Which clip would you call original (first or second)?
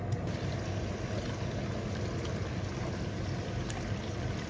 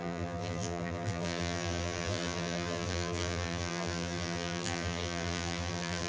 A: first